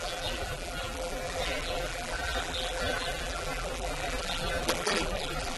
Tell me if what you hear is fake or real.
fake